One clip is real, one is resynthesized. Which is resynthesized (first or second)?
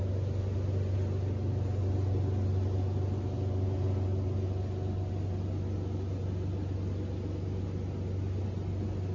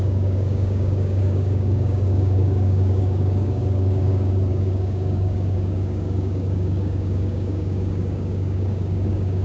second